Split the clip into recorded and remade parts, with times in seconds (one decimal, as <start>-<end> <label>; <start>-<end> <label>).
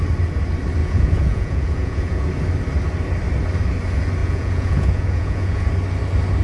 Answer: 0.0-0.8 recorded; 0.8-2.3 remade; 2.3-4.2 recorded; 4.2-5.7 remade; 5.7-6.4 recorded